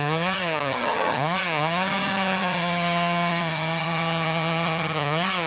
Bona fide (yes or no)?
no